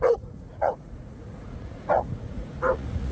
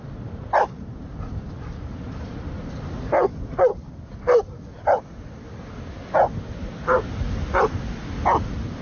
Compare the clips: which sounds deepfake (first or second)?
first